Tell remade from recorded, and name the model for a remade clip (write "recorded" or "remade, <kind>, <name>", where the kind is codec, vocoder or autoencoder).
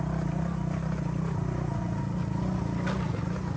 recorded